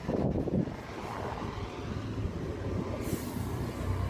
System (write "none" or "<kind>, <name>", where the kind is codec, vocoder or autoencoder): none